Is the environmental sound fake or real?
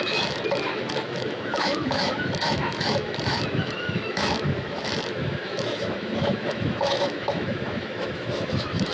fake